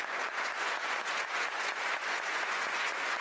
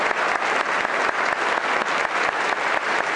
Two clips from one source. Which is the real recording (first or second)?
second